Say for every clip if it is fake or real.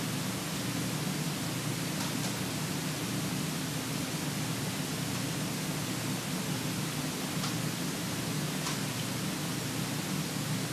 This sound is real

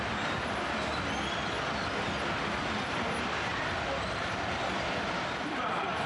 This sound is fake